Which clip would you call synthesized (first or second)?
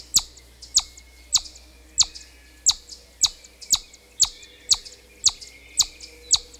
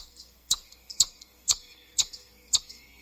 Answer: second